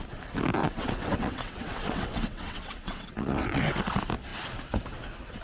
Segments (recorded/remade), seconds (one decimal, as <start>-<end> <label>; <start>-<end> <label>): 0.0-0.6 recorded; 0.6-3.8 remade; 3.8-5.4 recorded